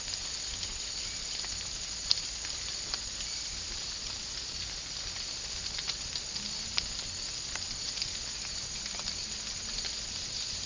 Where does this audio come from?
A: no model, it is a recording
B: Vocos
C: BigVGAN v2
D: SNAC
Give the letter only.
A